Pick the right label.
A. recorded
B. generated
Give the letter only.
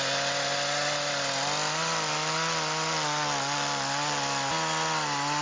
A